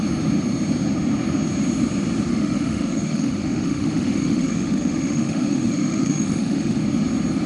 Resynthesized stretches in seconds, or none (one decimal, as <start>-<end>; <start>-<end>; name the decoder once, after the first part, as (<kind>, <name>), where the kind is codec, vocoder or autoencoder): 2.3-6.8 (autoencoder, DAC-VAE)